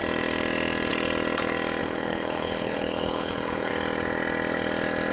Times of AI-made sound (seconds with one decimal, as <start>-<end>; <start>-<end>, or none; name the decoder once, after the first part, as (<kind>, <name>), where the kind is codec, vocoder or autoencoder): 1.8-3.7 (codec, HILCodec)